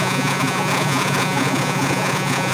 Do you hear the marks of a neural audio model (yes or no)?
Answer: yes